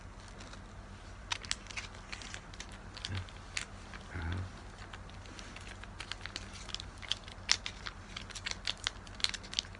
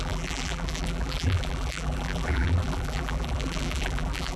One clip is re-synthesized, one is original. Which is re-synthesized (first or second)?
second